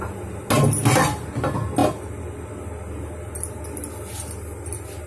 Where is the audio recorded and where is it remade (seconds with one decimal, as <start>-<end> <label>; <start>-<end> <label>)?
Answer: 0.0-5.1 recorded